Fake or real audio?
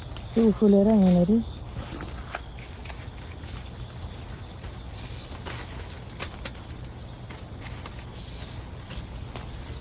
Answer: real